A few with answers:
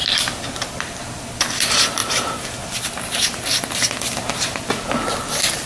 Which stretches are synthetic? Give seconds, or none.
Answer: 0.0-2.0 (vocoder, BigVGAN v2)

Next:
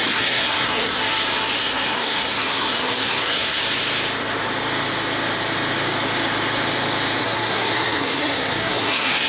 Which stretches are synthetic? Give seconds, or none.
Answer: 0.0-1.0 (codec, SNAC); 1.6-3.6; 7.2-9.3